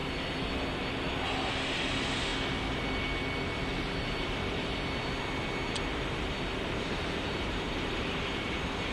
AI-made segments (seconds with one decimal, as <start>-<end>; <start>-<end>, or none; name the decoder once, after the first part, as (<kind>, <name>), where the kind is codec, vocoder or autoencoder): 5.9-8.5 (vocoder, BigVGAN v2)